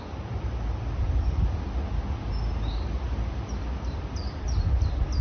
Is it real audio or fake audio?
real